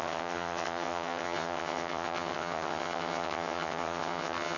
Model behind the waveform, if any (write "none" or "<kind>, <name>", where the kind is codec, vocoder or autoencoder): vocoder, HiFi-GAN